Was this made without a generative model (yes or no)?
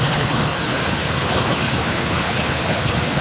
no